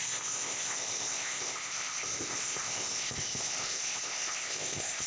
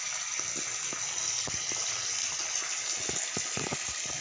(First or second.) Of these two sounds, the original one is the second